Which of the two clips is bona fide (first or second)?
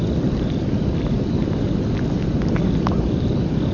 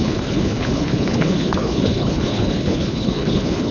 first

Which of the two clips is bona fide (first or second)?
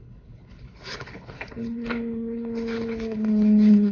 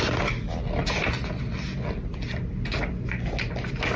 second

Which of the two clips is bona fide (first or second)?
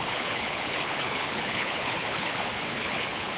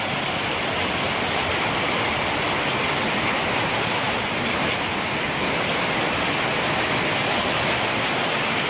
second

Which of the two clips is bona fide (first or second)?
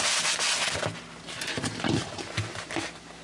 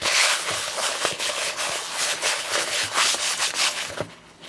first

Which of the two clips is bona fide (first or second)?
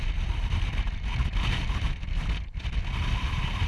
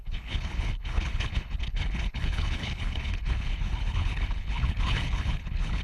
first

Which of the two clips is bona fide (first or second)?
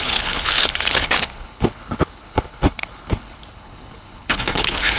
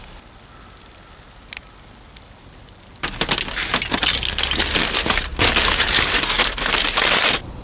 second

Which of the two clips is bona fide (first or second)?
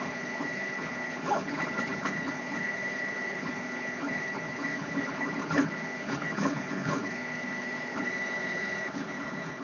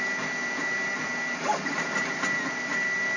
second